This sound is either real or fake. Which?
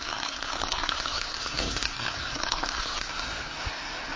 fake